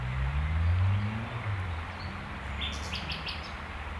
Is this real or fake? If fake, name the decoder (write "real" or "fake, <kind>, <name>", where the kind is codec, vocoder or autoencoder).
real